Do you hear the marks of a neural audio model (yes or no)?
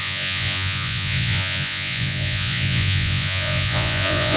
yes